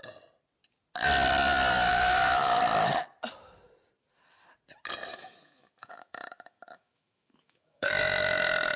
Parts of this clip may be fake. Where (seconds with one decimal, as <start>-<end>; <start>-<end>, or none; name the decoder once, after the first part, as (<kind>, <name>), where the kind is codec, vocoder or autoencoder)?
1.9-2.6 (autoencoder, DAC-VAE); 5.1-7.9